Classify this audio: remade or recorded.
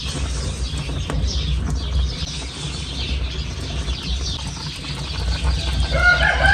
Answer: recorded